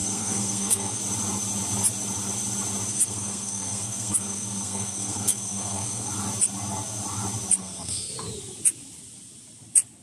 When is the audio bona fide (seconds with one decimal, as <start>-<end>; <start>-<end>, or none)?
1.0-2.9; 6.1-7.6; 8.1-10.0